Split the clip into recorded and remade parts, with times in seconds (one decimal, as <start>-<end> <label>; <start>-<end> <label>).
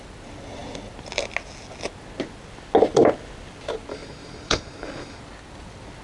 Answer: 0.0-3.9 recorded; 3.9-5.2 remade; 5.2-6.0 recorded